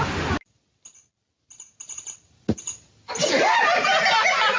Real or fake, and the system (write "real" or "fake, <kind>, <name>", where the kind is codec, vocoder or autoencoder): real